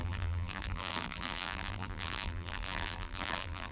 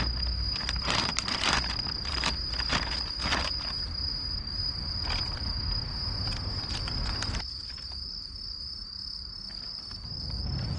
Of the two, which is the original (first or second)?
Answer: second